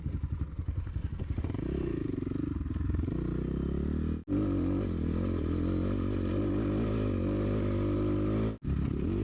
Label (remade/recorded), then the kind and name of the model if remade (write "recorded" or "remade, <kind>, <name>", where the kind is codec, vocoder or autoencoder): recorded